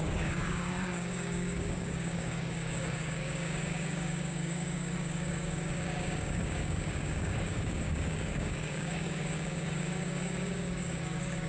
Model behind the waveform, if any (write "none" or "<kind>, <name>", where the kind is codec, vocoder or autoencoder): codec, DAC